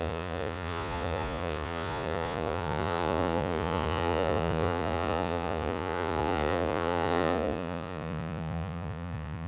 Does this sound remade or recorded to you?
remade